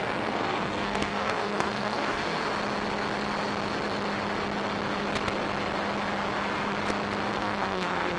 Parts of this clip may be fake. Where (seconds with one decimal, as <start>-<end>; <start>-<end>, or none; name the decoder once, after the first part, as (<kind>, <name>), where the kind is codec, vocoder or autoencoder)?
0.0-2.4 (codec, SNAC); 7.3-8.2